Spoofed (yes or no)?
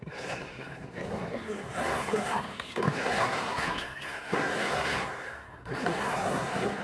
yes